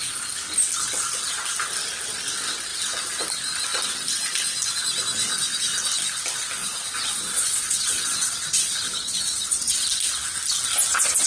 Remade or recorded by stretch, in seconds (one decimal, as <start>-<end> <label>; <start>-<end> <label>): 0.0-6.6 recorded; 6.6-9.4 remade; 9.4-11.3 recorded